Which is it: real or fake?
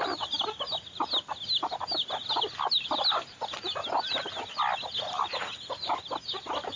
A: real